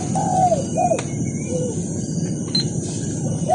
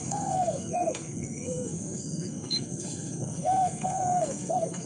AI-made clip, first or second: second